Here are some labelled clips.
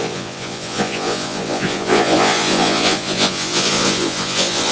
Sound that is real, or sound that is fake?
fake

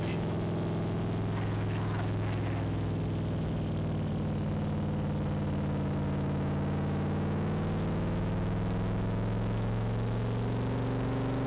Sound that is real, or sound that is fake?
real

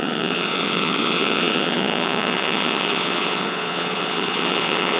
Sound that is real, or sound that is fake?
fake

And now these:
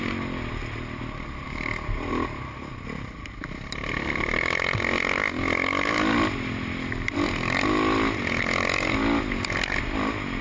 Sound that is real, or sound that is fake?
real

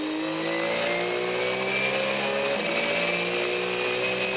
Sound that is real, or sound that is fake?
real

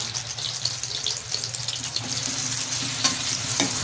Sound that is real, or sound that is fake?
real